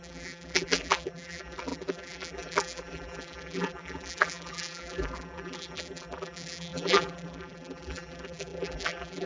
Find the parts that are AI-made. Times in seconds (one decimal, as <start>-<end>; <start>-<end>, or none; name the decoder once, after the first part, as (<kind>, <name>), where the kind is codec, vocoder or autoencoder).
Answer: 0.0-9.3 (vocoder, BigVGAN v2)